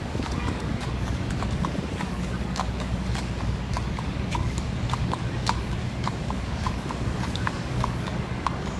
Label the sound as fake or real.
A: fake